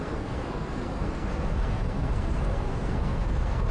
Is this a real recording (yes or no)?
no